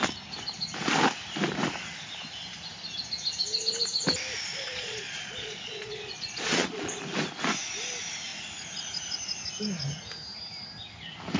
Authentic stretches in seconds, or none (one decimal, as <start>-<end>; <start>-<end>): 0.0-4.5; 7.0-11.4